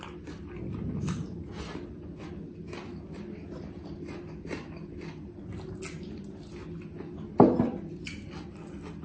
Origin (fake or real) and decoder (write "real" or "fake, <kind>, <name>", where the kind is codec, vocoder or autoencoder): real